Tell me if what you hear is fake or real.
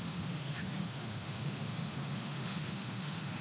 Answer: fake